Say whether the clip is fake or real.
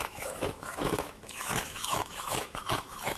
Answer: fake